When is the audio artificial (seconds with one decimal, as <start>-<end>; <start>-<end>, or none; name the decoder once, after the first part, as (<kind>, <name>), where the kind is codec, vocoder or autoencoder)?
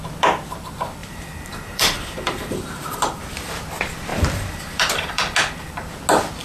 1.0-3.5 (vocoder, BigVGAN v2); 4.1-5.2